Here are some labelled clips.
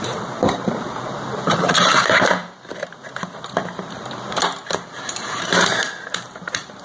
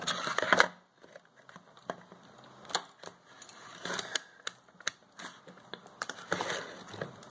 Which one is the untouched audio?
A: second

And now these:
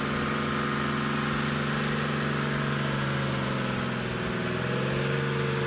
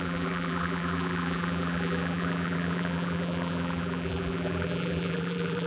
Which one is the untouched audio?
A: first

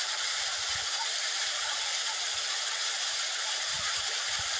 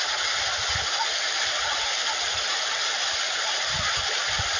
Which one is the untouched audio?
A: second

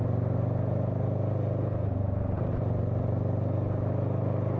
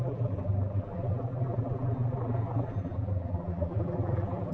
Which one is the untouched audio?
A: first